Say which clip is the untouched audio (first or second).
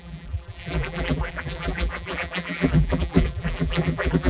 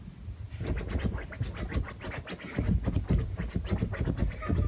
second